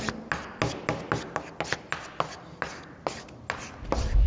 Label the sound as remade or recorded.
recorded